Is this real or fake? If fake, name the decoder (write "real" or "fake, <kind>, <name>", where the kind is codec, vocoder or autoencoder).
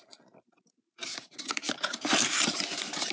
fake, vocoder, BigVGAN v2